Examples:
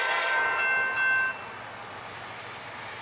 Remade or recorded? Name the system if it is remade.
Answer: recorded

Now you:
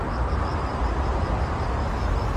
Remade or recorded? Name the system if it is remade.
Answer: recorded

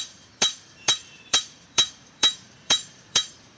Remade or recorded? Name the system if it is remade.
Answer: remade, vocoder, BigVGAN v2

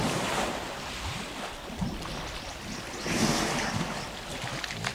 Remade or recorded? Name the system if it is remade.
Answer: remade, vocoder, BigVGAN v2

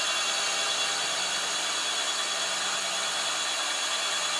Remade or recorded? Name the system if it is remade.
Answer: recorded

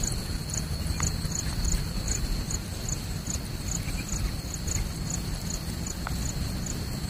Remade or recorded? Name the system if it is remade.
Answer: recorded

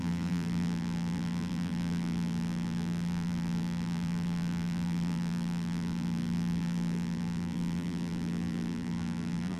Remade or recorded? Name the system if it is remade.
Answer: remade, vocoder, BigVGAN v2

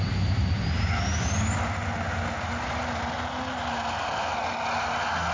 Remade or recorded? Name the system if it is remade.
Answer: recorded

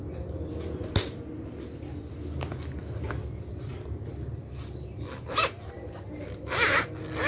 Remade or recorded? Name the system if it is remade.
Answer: recorded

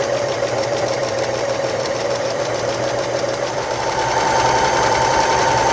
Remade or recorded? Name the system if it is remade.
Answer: remade, vocoder, BigVGAN v2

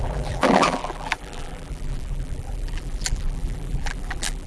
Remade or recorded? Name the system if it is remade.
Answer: remade, vocoder, BigVGAN v2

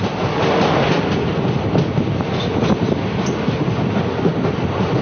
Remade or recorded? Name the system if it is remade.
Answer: recorded